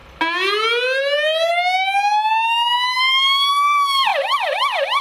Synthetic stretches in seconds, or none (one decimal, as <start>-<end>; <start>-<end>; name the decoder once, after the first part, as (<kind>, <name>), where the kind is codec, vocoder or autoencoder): 3.0-5.0 (autoencoder, DAC-VAE)